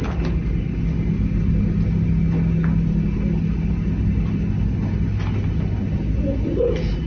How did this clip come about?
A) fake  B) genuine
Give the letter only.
B